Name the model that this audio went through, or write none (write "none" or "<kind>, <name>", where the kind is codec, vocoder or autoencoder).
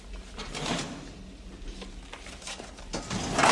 none